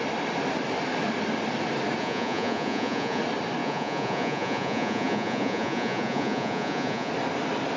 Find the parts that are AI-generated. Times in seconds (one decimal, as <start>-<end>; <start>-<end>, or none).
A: 2.0-3.2; 3.6-7.1